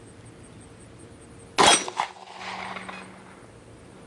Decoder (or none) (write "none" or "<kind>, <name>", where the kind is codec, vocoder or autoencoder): none